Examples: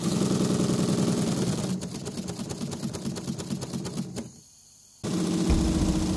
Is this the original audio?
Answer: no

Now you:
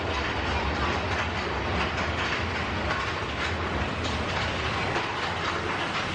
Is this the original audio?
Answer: yes